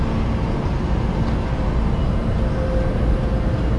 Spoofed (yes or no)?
no